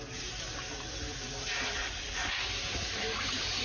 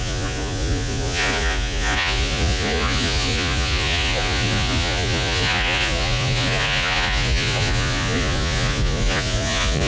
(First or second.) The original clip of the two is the first